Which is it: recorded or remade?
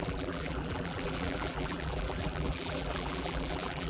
remade